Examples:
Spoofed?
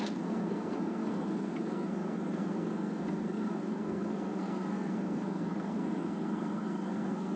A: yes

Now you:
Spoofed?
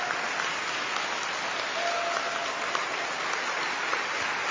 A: no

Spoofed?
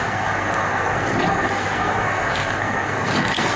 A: yes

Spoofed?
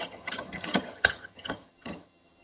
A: yes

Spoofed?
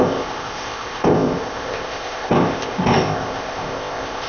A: yes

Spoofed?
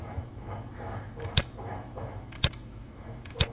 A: yes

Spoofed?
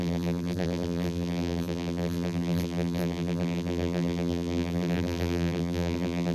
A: yes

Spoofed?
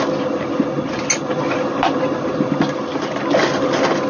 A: no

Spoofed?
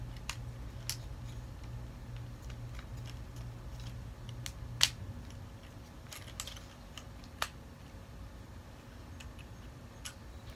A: no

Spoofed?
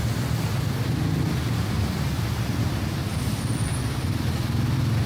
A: no